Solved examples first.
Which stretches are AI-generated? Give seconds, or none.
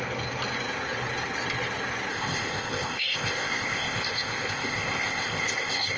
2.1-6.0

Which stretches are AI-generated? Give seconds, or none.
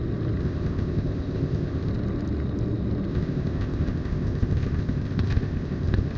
0.4-1.9; 3.1-6.2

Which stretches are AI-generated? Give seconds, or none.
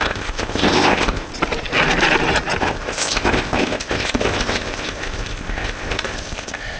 0.0-1.3; 2.6-6.8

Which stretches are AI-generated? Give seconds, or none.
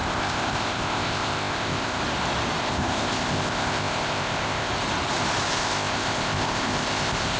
0.0-2.0; 2.6-4.7; 5.5-7.4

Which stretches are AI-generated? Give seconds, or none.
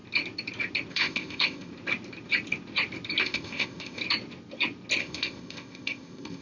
0.9-1.7; 3.2-4.0; 5.0-6.4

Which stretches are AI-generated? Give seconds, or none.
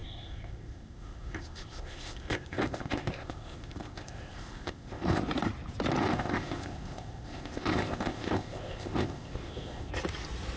0.0-5.2; 6.0-9.9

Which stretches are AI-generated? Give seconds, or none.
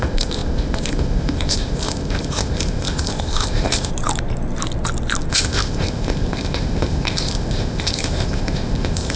0.0-3.9; 5.3-9.2